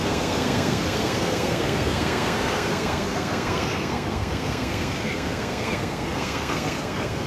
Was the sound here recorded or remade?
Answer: remade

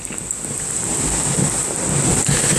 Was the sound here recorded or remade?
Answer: recorded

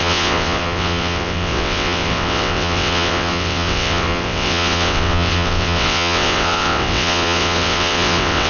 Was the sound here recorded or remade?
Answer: remade